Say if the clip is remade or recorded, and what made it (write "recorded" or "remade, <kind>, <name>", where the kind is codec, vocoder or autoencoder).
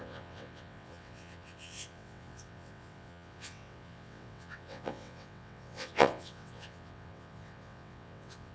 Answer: remade, vocoder, WaveNeXt